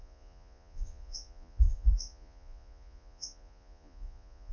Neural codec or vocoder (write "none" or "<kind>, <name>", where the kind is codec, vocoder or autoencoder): vocoder, Vocos